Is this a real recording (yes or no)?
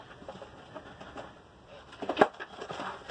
yes